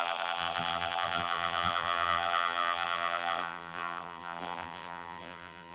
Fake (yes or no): yes